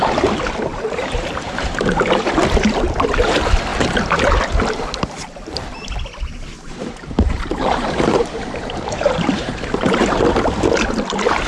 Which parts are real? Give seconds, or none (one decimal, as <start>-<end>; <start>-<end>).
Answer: 0.0-0.7; 2.3-6.5; 10.2-11.5

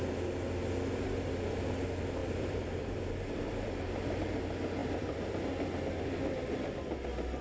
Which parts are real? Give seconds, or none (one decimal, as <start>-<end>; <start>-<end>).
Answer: 0.0-2.2; 4.2-4.8; 5.3-7.4

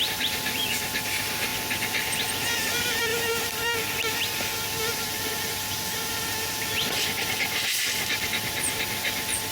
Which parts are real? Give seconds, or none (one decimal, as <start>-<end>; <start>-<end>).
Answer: 1.5-2.4; 3.1-4.8

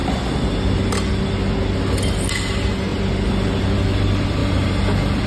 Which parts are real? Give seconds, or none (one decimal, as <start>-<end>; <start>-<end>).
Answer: 0.0-4.4

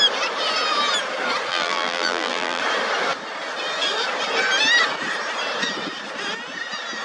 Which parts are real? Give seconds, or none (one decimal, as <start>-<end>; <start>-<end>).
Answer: 0.0-1.5; 2.6-7.0

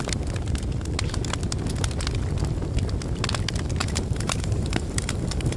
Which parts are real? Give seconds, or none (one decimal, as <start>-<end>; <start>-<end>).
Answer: 0.0-3.8